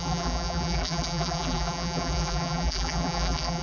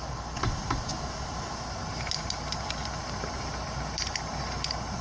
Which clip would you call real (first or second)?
second